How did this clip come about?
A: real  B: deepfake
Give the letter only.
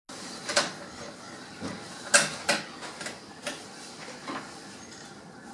A